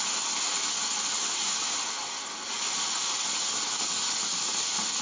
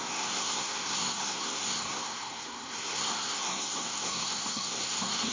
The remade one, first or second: second